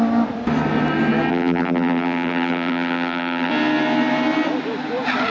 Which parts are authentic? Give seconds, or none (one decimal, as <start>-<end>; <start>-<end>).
0.0-1.3; 3.5-5.3